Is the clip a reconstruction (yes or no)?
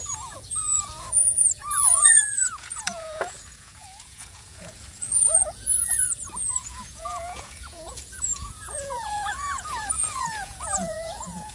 yes